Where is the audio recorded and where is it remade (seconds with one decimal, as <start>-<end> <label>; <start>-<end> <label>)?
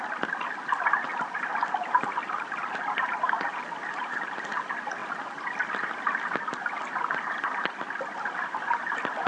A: 0.0-9.3 recorded